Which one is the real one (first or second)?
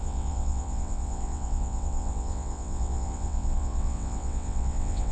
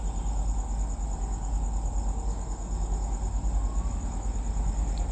second